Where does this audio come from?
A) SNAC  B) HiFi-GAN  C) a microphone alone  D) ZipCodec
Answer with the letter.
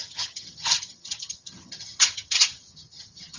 B